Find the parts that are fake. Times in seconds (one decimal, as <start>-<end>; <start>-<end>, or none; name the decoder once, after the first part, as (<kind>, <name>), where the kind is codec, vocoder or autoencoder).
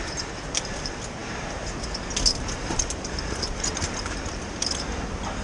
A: none